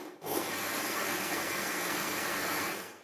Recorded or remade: remade